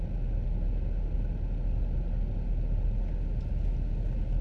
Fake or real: real